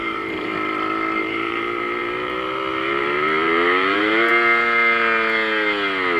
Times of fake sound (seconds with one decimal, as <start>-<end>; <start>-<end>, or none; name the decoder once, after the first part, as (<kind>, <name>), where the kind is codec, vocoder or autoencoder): 0.0-0.5 (vocoder, BigVGAN v2); 1.2-4.3